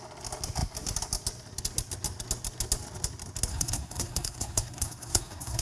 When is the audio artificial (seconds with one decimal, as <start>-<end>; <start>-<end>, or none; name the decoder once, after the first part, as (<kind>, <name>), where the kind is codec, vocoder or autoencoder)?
3.5-5.6 (codec, SNAC)